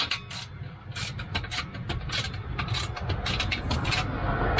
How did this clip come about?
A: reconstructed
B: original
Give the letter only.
B